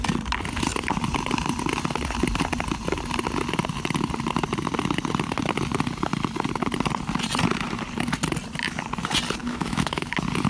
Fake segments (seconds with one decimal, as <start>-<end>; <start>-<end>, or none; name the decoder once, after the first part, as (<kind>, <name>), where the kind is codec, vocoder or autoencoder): 9.4-10.1 (autoencoder, DAC-VAE)